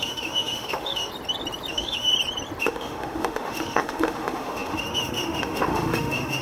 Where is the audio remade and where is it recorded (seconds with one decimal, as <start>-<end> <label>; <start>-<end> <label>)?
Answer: 0.0-1.1 remade; 1.1-1.7 recorded; 1.7-2.1 remade; 2.1-2.6 recorded; 2.6-6.4 remade